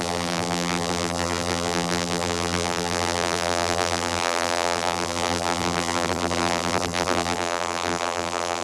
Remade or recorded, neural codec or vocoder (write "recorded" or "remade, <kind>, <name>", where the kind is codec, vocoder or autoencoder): remade, vocoder, BigVGAN v2